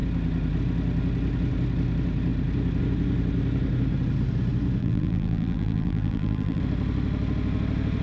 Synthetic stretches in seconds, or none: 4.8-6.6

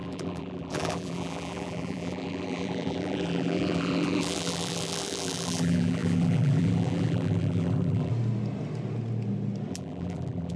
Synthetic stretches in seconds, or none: 0.0-8.1; 9.7-10.6

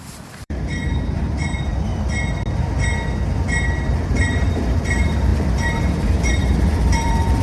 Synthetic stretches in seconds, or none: 0.0-1.9; 3.9-7.4

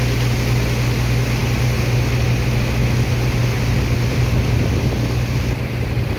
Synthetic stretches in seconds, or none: none